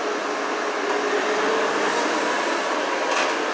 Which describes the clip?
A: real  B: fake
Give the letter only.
A